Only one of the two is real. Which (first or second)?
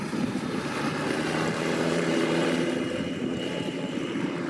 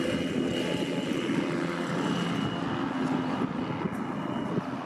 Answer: second